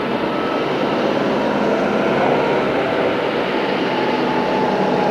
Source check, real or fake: real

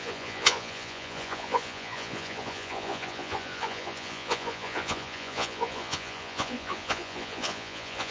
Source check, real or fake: fake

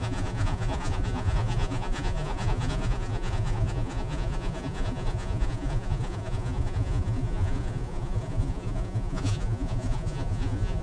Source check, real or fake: fake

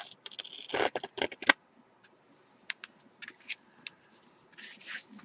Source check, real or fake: real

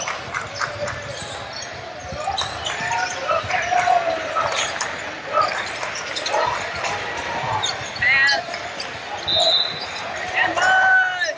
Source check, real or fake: real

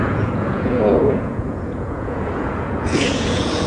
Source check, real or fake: fake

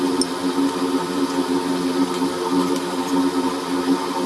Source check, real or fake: real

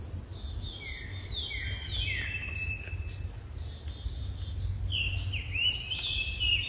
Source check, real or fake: real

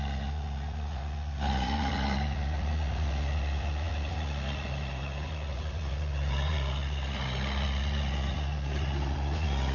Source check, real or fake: fake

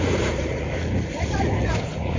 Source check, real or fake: fake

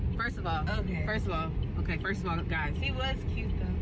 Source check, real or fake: real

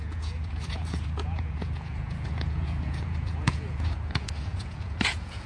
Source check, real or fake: fake